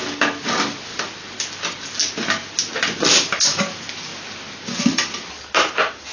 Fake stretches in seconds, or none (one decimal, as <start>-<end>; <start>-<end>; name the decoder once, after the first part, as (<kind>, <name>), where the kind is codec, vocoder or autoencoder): none